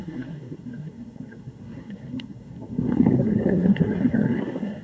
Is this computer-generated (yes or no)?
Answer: yes